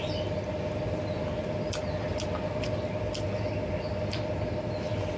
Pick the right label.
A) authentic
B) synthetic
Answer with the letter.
A